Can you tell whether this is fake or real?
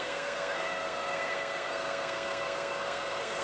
fake